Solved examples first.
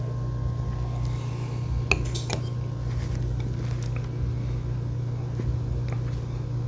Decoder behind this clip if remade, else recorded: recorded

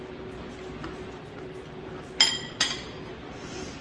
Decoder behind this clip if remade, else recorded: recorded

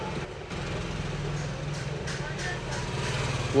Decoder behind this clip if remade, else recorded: recorded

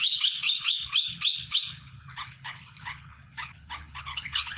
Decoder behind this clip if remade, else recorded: remade, codec, HILCodec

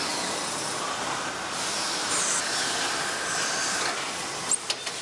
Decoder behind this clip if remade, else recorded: recorded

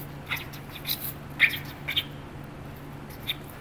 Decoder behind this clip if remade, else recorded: recorded